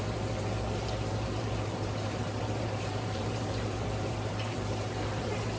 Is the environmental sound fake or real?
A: fake